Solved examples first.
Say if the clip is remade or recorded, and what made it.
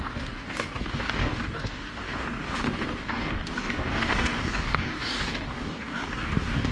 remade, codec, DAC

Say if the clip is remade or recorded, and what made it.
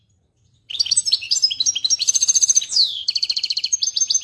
remade, vocoder, BigVGAN v2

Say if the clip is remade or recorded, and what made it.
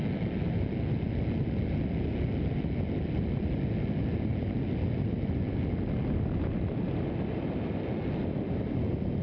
recorded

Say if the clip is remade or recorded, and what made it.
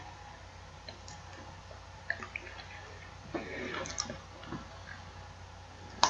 recorded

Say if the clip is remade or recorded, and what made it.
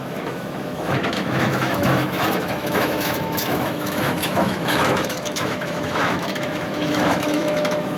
remade, autoencoder, DAC-VAE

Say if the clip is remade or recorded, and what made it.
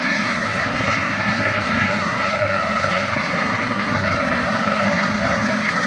remade, codec, SNAC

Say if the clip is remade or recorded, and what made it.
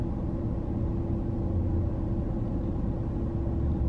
recorded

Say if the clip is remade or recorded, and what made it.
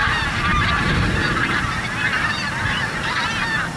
recorded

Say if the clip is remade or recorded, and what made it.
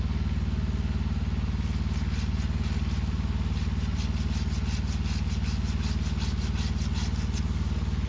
recorded